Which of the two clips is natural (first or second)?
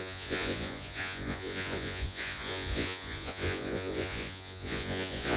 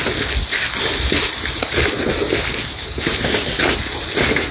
second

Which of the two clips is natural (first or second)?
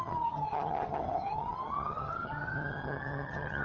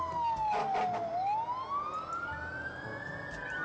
second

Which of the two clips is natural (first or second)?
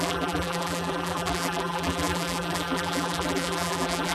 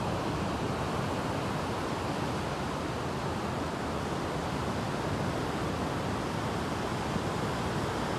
second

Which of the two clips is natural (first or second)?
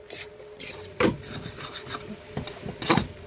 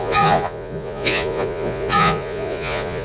first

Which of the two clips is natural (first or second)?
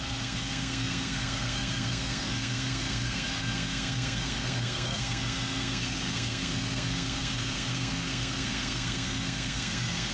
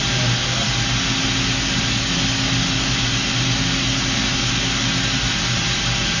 second